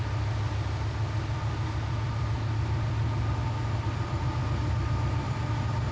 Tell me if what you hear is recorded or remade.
recorded